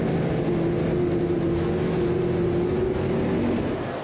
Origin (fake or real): real